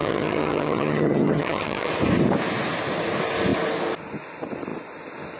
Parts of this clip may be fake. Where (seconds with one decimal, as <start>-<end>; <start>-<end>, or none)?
0.0-1.9